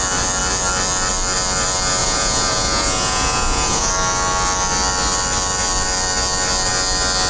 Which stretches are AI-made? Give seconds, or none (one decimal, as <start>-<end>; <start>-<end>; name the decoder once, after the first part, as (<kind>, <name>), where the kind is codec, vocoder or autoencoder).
2.0-3.9 (vocoder, Vocos)

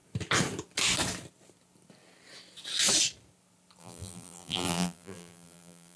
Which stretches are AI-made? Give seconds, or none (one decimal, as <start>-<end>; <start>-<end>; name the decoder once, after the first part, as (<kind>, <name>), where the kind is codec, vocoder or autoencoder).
3.8-6.0 (vocoder, BigVGAN v2)

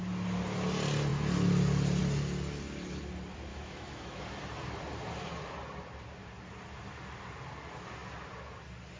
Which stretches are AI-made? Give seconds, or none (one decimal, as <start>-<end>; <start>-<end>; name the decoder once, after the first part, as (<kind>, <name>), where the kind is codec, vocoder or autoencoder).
3.5-4.2 (autoencoder, DAC-VAE)

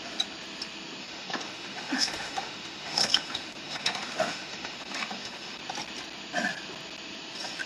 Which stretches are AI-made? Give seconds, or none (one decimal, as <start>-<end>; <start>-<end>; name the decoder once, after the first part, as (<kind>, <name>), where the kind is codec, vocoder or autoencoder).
1.0-5.6 (autoencoder, DAC-VAE)

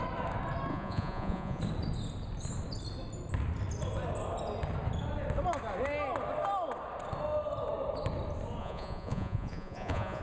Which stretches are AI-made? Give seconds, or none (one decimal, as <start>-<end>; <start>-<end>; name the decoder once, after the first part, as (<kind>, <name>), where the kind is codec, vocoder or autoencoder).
0.7-1.6 (vocoder, Vocos); 8.6-10.2

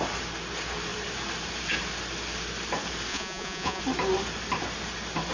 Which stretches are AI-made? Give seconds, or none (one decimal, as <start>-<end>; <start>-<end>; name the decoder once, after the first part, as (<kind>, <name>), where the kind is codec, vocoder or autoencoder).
3.1-3.8 (vocoder, Vocos)

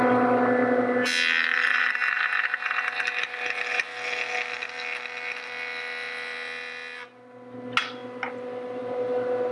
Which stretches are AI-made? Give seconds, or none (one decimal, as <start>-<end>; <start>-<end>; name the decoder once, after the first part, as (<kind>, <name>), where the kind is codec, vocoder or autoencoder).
none